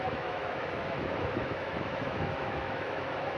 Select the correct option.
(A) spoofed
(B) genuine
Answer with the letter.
A